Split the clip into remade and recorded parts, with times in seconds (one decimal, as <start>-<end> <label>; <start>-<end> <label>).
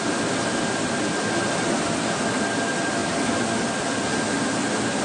0.0-5.0 recorded